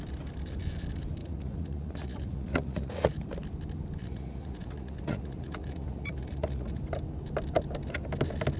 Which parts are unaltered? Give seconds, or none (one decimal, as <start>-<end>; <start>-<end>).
0.0-1.2; 3.1-4.0; 6.8-8.6